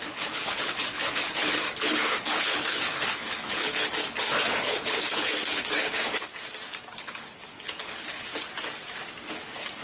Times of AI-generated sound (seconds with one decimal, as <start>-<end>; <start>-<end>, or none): 0.0-6.3; 7.0-8.3; 9.3-9.8